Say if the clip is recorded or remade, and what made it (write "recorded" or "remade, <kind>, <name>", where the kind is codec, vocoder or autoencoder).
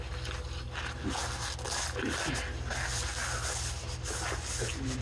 recorded